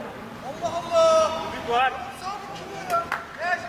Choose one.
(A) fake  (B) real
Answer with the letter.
B